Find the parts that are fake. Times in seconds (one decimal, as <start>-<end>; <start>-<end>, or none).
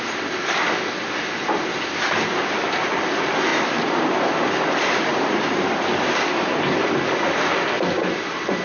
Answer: 3.5-4.1; 5.1-6.1